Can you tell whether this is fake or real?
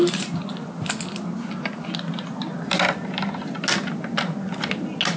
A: real